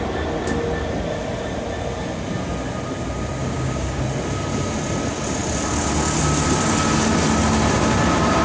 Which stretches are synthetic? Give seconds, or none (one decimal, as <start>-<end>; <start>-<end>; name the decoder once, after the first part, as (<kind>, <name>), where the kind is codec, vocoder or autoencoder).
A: 3.4-4.0 (codec, DAC)